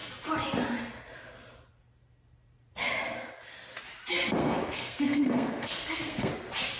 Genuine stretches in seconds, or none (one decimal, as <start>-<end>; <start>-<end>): 0.0-4.4; 6.3-6.8